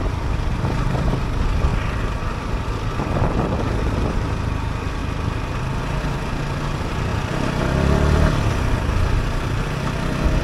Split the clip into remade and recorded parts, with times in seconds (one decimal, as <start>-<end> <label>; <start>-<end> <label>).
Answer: 0.0-1.7 remade; 1.7-3.0 recorded; 3.0-5.0 remade; 5.0-5.8 recorded; 5.8-10.4 remade